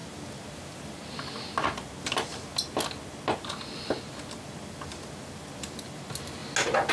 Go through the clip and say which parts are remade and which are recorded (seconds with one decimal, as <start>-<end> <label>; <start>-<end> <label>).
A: 0.0-6.9 recorded